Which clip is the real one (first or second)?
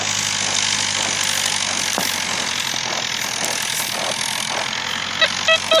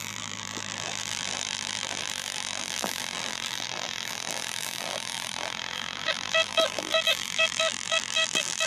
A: first